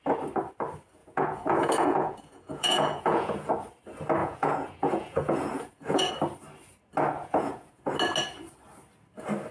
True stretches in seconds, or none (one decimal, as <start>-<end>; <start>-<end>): 0.0-1.0; 3.5-4.2; 6.1-7.2; 7.9-9.5